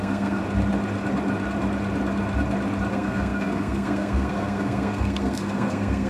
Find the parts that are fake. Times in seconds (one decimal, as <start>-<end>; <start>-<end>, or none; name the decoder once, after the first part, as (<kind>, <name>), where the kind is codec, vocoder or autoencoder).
0.0-0.4 (codec, SNAC); 2.9-6.1